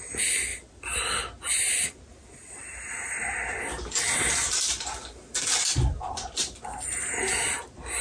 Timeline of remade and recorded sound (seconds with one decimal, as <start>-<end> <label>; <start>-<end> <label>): 0.0-8.0 recorded